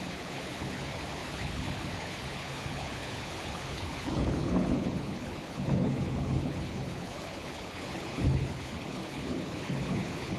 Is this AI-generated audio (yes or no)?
yes